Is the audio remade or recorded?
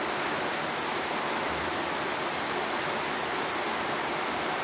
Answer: recorded